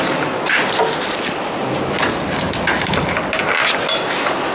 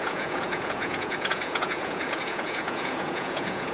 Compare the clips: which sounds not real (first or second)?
second